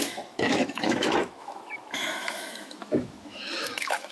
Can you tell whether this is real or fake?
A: fake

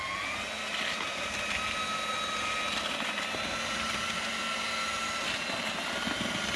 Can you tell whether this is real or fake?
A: real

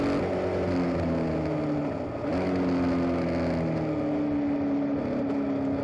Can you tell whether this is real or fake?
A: real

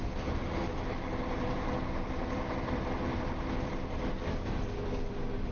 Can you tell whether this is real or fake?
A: real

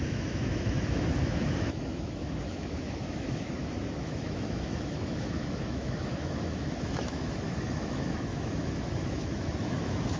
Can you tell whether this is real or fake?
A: fake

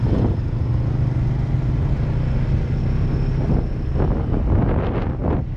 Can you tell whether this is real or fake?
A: real